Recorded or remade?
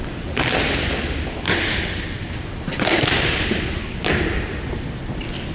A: recorded